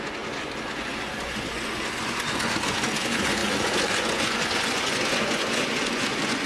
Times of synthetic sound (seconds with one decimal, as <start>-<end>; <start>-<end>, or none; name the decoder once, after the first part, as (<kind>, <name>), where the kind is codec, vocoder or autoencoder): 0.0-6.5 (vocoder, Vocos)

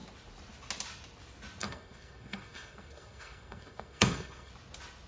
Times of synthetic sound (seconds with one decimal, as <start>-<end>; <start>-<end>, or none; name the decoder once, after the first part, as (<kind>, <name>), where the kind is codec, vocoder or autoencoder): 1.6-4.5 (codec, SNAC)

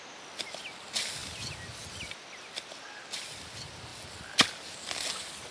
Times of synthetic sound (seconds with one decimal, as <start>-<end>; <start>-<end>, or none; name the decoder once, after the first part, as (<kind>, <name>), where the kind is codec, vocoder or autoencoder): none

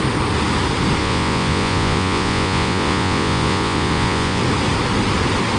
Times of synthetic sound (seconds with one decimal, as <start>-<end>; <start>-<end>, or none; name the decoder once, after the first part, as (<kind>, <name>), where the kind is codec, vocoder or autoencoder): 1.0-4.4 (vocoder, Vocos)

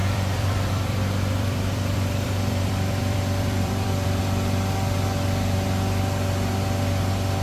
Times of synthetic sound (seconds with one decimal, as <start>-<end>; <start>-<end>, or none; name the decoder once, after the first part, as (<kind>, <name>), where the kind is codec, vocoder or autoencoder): 0.0-4.2 (vocoder, BigVGAN v2)

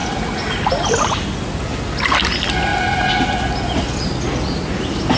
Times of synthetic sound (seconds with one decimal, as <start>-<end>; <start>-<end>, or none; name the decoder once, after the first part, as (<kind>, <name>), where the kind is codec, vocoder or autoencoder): 0.0-0.6 (vocoder, BigVGAN v2)